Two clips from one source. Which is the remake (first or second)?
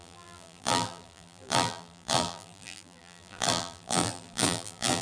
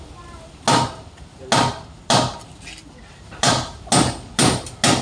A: first